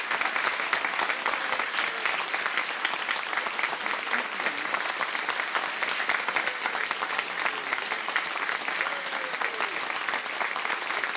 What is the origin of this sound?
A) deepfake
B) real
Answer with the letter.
B